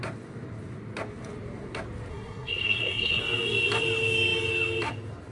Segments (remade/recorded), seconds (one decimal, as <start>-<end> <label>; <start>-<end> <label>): 0.0-2.1 recorded; 2.1-3.2 remade; 3.2-5.3 recorded